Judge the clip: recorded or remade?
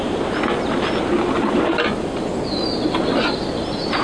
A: recorded